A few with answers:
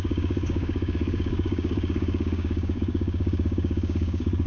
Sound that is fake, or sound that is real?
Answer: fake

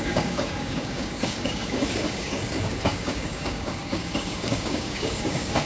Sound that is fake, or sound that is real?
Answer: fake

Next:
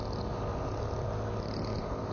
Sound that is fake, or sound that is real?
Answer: real